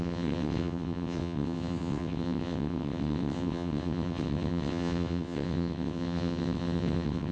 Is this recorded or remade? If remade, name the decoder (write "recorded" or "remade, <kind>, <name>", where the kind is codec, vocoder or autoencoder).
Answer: remade, vocoder, WaveNeXt